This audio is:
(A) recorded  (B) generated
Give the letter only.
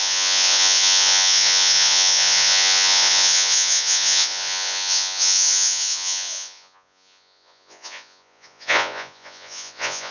B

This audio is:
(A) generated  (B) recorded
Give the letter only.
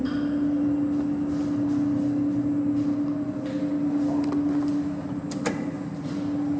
B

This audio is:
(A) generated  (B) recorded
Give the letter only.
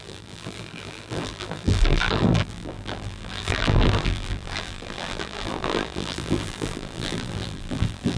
A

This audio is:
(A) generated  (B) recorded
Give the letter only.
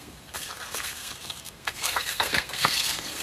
A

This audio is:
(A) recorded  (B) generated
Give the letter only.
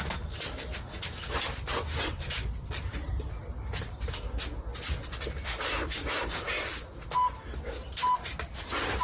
A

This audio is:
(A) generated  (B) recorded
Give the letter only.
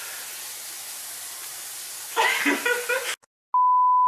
B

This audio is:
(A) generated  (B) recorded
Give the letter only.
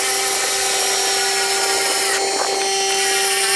B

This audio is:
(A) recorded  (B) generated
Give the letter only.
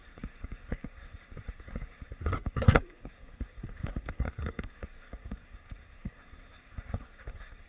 B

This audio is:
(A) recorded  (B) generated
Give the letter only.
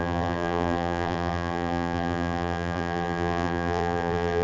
B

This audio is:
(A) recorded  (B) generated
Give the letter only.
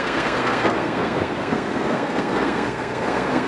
B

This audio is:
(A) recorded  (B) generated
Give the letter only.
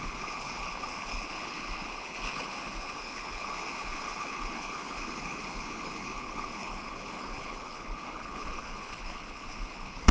B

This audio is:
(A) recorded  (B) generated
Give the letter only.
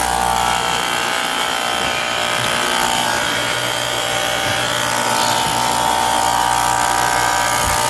A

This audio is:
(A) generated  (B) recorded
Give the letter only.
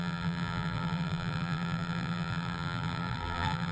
A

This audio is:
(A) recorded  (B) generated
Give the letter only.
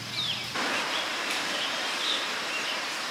B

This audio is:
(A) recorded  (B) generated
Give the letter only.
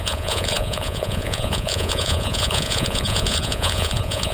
B